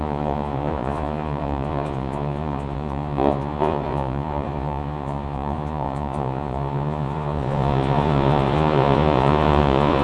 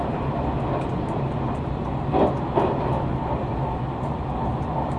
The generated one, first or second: first